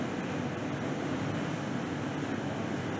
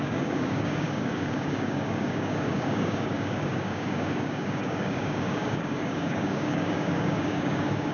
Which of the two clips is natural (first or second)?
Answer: first